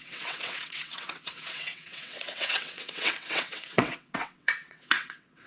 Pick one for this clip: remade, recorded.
remade